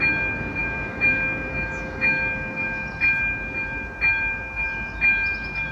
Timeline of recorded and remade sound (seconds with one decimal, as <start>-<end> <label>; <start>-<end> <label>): 0.0-0.6 recorded; 0.6-2.8 remade; 2.8-5.7 recorded